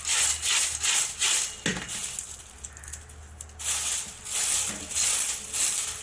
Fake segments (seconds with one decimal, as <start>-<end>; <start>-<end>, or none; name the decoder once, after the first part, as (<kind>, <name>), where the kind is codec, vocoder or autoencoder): none